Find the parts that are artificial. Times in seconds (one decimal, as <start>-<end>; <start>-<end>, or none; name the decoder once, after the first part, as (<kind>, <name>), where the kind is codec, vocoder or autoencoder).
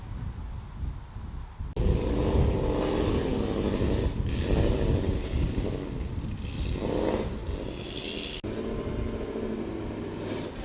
none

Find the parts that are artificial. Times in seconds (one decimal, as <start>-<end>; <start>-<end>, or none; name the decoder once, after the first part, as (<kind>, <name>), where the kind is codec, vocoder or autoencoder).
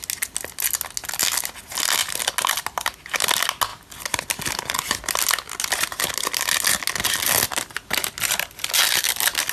none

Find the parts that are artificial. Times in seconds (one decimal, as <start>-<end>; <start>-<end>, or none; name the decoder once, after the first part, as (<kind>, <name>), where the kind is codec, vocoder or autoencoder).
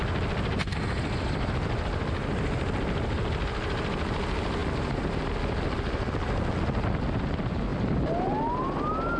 none